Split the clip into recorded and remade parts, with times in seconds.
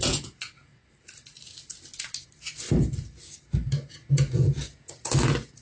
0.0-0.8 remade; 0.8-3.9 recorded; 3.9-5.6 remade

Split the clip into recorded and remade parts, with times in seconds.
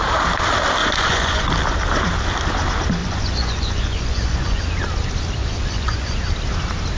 0.0-0.8 recorded; 0.8-1.5 remade; 1.5-3.0 recorded; 3.0-4.6 remade; 4.6-5.4 recorded; 5.4-6.2 remade; 6.2-7.0 recorded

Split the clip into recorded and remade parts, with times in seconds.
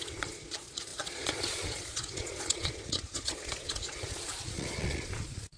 0.0-5.6 remade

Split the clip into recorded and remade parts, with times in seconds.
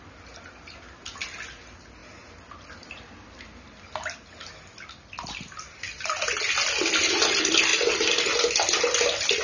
0.0-9.4 recorded